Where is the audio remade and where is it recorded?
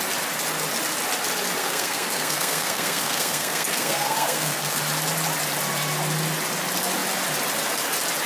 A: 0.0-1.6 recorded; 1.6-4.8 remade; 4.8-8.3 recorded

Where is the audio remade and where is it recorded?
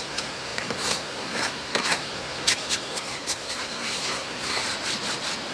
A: 0.0-4.6 remade; 4.6-5.5 recorded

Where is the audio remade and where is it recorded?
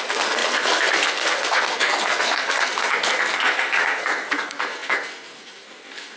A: 0.0-6.2 remade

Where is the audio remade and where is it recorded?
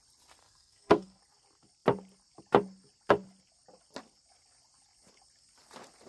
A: 0.0-0.4 recorded; 0.4-1.2 remade; 1.2-6.1 recorded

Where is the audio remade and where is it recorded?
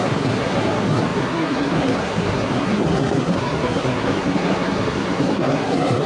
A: 0.0-6.1 remade